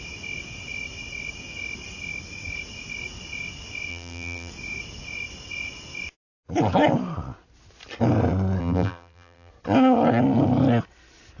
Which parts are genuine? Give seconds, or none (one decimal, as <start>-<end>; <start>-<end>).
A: 0.0-3.9; 4.5-8.6; 9.5-11.4